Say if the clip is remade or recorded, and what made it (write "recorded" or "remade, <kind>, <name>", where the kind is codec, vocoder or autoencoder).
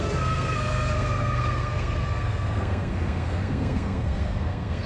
remade, codec, SNAC